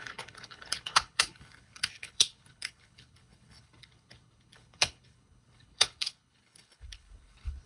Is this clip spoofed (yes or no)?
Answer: yes